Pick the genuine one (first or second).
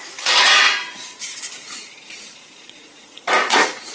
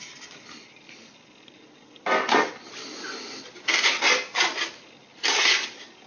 second